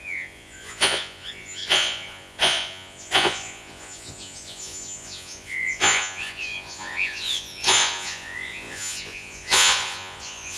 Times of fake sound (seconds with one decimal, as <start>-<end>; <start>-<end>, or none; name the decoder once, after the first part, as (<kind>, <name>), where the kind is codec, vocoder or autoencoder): 0.0-10.6 (vocoder, Vocos)